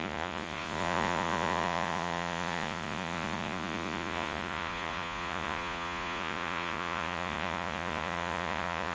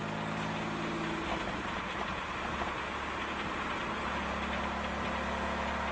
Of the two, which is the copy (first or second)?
first